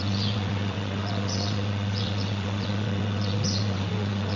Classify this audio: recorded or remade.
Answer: remade